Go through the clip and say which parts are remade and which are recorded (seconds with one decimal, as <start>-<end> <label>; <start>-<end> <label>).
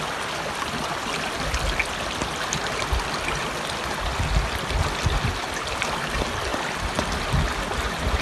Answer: 0.0-8.2 recorded